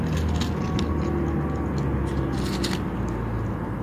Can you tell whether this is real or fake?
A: real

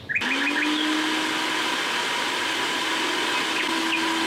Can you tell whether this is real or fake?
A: real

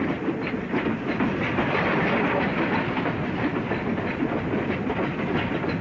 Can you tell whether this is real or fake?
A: real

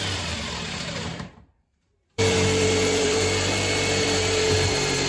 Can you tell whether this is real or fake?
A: fake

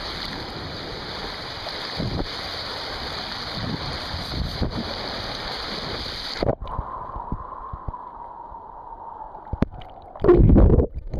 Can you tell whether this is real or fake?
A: real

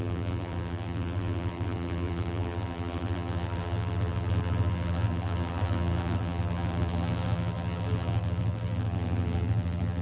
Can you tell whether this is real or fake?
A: fake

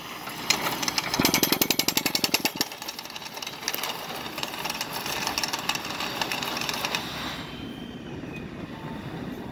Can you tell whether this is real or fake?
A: real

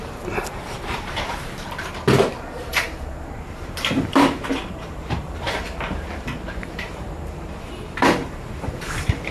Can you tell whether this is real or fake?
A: fake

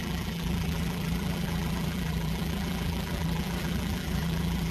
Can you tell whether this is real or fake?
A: fake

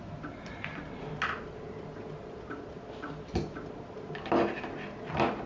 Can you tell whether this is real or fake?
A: real